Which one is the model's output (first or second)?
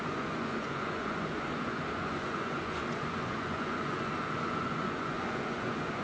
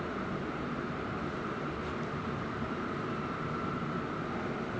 first